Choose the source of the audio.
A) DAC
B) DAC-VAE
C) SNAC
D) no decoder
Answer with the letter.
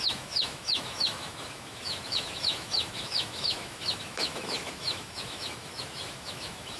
B